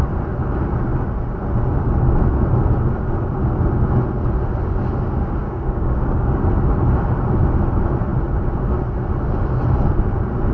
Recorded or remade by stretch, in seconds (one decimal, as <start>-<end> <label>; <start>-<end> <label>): 0.0-5.4 recorded; 5.4-6.4 remade; 6.4-10.5 recorded